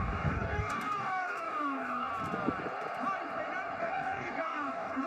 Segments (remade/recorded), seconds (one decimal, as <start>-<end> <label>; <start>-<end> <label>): 0.0-2.1 remade; 2.1-3.8 recorded; 3.8-5.1 remade